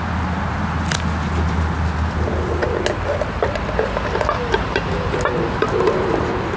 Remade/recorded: recorded